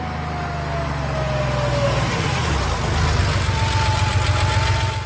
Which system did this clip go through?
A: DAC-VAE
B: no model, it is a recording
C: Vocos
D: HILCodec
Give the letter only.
B